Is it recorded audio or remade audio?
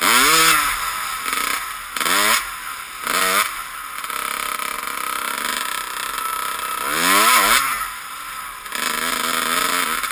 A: recorded